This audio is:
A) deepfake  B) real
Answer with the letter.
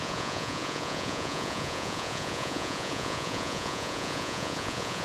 A